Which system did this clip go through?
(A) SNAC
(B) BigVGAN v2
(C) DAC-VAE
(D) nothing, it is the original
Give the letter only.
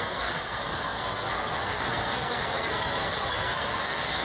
A